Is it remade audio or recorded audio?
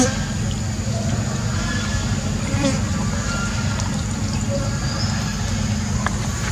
recorded